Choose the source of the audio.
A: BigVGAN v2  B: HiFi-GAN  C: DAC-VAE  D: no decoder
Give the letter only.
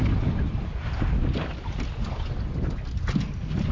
D